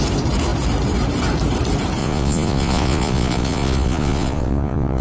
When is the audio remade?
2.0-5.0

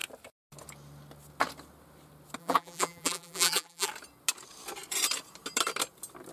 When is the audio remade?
2.4-3.9

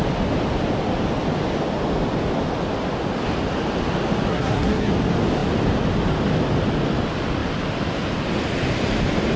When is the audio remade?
4.3-4.9

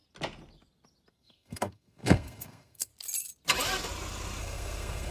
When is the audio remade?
1.1-2.9; 4.4-5.1

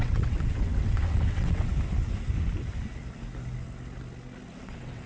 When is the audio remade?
0.0-1.7; 4.6-5.1

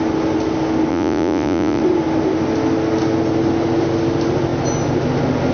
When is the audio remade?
0.9-1.8

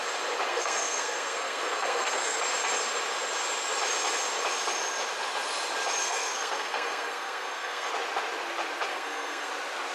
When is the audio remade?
0.5-2.4; 6.0-7.9; 8.9-9.5